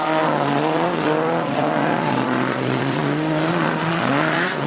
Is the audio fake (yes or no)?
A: yes